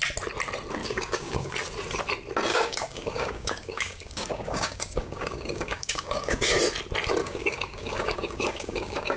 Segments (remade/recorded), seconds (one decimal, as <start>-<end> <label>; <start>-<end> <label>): 0.0-0.8 recorded; 0.8-1.5 remade; 1.5-2.5 recorded; 2.5-6.6 remade; 6.6-7.2 recorded; 7.2-9.2 remade